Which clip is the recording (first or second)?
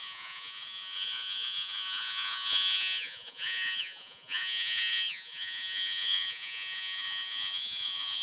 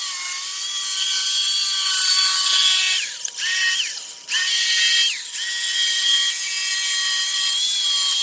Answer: second